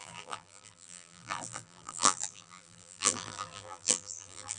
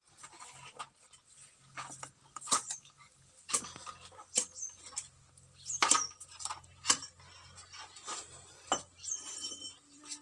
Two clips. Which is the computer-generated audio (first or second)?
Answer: first